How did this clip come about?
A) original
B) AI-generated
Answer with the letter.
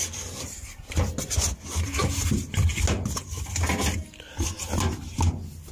A